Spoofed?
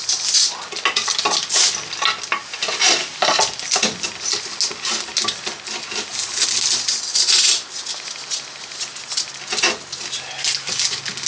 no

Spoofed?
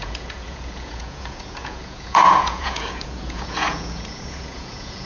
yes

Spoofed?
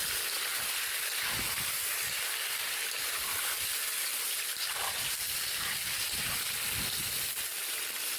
no